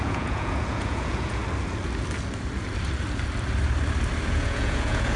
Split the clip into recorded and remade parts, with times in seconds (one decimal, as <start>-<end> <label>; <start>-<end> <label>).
0.0-1.4 remade; 1.4-4.3 recorded; 4.3-5.2 remade